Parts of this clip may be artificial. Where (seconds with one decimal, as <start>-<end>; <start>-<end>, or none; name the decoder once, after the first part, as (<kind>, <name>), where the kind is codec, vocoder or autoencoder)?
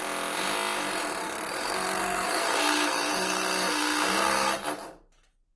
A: 1.2-4.6 (codec, SNAC)